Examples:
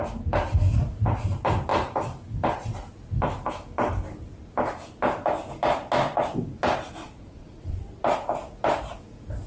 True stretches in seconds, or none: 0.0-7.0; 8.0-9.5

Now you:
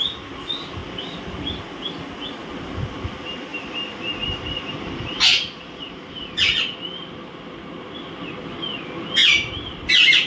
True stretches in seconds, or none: 0.0-10.3

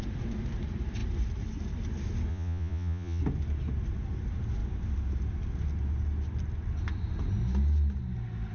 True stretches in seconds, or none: 0.0-2.3; 3.2-8.5

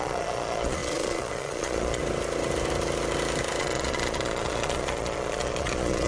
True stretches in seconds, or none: 2.0-3.6

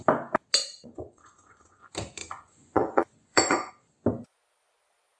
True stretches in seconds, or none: 0.0-0.6; 1.8-2.2; 3.7-5.2

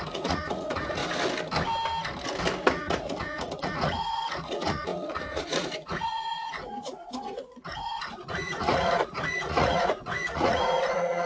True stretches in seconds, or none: 1.0-2.7

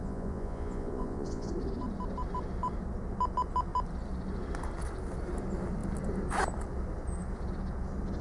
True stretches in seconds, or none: 1.5-8.2